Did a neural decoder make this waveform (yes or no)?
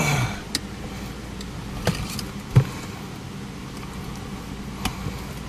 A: no